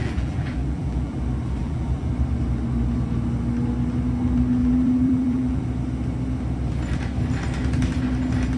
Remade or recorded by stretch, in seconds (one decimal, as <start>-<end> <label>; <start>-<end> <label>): 0.0-1.2 remade; 1.2-1.6 recorded; 1.6-2.1 remade; 2.1-4.6 recorded; 4.6-5.6 remade; 5.6-8.6 recorded